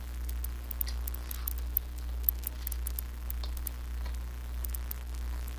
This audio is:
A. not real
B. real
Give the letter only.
B